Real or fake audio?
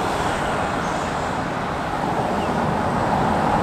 real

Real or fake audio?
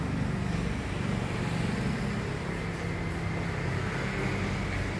real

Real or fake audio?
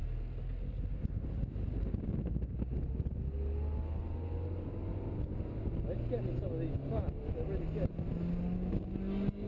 real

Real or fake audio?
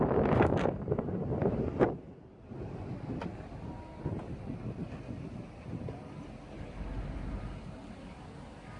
real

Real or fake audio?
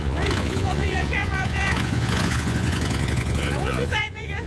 fake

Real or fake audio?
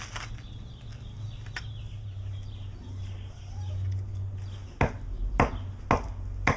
real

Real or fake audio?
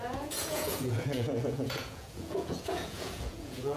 fake